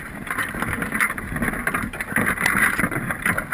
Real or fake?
real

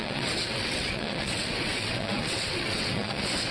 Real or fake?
fake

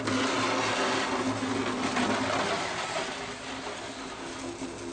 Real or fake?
real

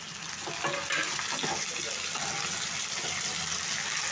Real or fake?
real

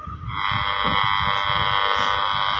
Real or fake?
real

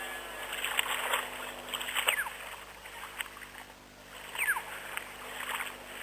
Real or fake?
real